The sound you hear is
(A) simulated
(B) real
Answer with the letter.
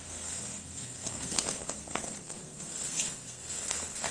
A